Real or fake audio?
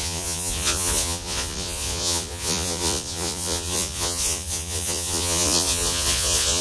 fake